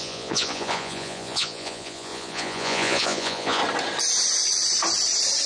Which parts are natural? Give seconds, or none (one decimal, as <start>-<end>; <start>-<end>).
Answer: 3.6-5.5